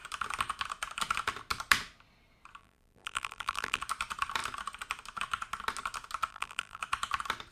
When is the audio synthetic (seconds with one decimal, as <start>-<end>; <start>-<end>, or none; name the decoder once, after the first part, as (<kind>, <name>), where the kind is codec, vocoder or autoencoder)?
2.6-3.8 (vocoder, BigVGAN v2); 6.3-6.8

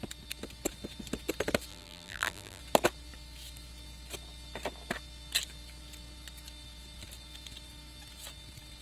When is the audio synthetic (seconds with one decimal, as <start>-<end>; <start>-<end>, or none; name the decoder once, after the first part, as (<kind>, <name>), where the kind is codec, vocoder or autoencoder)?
1.7-2.6 (vocoder, BigVGAN v2)

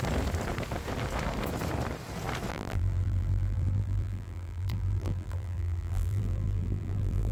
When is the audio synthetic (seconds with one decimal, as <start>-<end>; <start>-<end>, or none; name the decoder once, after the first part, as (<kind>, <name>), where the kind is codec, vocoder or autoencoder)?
2.5-7.3 (vocoder, BigVGAN v2)

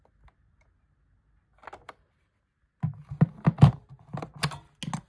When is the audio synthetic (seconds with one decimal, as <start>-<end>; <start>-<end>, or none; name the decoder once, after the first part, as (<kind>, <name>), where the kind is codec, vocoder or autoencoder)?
none